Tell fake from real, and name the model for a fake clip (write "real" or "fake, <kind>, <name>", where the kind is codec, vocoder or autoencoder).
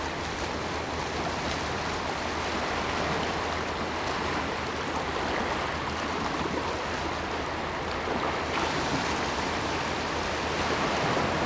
real